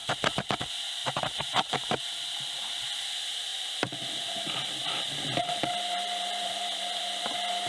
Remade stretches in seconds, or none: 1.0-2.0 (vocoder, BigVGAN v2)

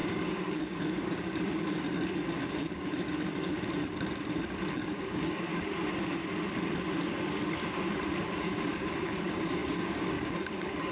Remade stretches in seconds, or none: 0.0-3.5 (codec, DAC); 4.7-5.5; 8.4-10.9

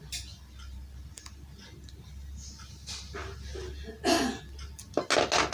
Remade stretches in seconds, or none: none